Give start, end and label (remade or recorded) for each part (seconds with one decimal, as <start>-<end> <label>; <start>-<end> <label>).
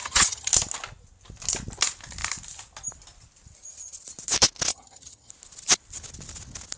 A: 0.0-0.5 remade; 0.5-4.7 recorded; 4.7-5.3 remade; 5.3-6.8 recorded